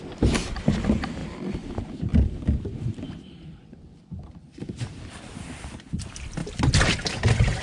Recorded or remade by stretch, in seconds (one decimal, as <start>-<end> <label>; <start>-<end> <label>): 0.0-1.2 recorded; 1.2-5.8 remade; 5.8-7.6 recorded